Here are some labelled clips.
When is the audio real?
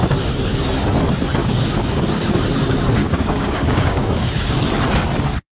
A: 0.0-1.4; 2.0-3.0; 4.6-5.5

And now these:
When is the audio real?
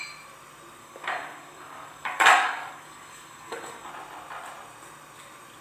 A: 0.0-0.8; 3.9-5.6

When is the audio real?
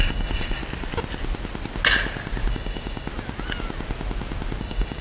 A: 0.6-2.5; 3.1-4.6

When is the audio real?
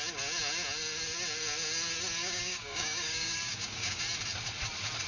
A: 0.0-2.2; 4.0-5.1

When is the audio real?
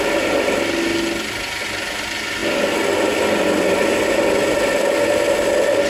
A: 0.0-5.9